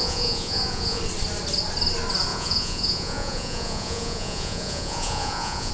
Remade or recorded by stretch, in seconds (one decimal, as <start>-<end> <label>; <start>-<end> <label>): 0.0-1.0 remade; 1.0-2.3 recorded; 2.3-5.7 remade